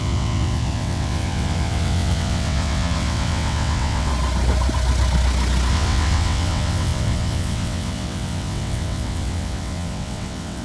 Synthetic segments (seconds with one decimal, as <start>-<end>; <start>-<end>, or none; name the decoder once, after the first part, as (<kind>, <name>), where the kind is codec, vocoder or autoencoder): 0.0-4.1 (vocoder, WaveNeXt); 5.7-10.6